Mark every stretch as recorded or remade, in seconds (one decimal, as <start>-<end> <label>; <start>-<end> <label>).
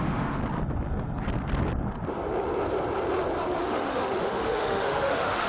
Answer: 0.0-0.4 remade; 0.4-3.6 recorded; 3.6-5.5 remade